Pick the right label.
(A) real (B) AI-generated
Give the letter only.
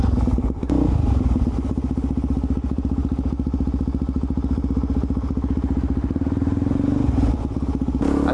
A